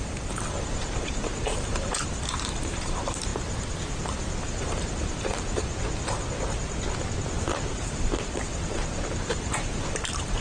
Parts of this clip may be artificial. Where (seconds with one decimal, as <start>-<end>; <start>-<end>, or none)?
0.0-3.3; 4.4-5.7; 7.7-10.4

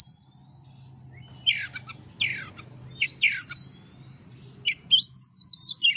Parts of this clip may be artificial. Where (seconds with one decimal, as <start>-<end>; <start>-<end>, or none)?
none